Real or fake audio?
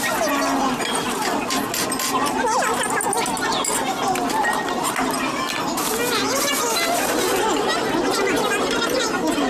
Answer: real